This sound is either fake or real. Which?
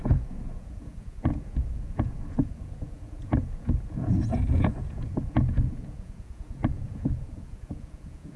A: fake